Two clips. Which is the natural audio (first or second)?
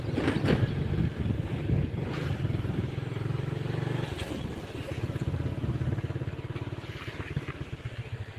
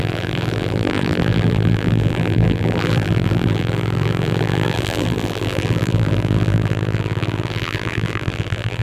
first